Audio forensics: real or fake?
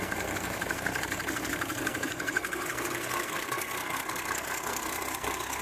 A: fake